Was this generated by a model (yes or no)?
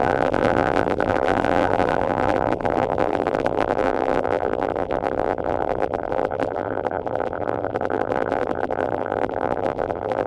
yes